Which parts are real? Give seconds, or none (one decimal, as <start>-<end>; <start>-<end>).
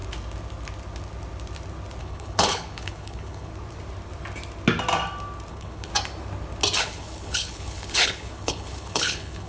0.0-2.0; 3.5-5.5; 5.9-6.8